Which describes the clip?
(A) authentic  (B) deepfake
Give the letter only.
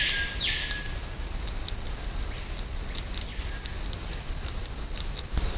A